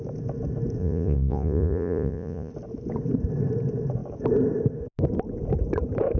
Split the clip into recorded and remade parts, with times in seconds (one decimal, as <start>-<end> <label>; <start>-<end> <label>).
0.0-0.8 recorded; 0.8-2.5 remade; 2.5-6.2 recorded

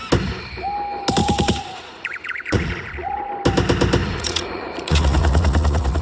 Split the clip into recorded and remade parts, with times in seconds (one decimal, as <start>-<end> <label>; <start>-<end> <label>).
0.0-1.2 recorded; 1.2-3.3 remade; 3.3-4.0 recorded; 4.0-6.0 remade

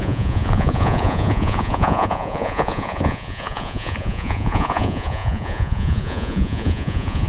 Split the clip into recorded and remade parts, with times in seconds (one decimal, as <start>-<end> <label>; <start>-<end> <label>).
0.0-7.3 remade

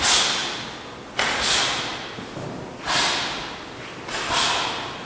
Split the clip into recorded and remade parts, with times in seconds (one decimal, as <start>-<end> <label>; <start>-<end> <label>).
0.0-5.1 recorded